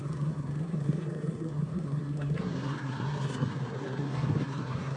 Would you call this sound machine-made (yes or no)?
yes